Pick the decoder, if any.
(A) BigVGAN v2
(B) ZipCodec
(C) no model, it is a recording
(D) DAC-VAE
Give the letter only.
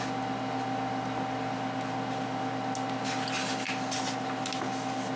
C